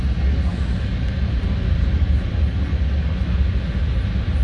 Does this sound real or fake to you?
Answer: real